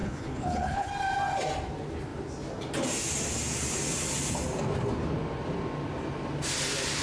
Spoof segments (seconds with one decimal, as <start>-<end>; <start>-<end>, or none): 0.0-0.9